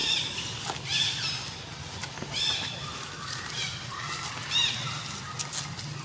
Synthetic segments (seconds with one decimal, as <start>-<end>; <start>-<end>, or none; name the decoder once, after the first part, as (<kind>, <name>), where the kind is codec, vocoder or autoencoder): 0.0-0.7 (vocoder, BigVGAN v2); 2.0-5.2